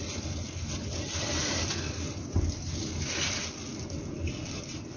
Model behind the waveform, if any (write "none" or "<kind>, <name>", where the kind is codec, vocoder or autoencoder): none